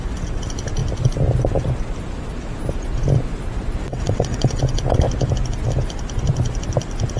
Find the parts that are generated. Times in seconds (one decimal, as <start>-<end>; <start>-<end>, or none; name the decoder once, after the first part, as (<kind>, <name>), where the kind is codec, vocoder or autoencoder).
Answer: 3.8-4.6 (vocoder, WaveNeXt)